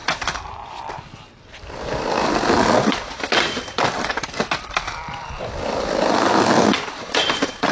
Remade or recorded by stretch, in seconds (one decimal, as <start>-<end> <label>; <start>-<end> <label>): 0.0-0.8 remade; 0.8-7.7 recorded